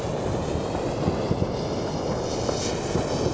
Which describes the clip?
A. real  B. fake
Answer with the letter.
A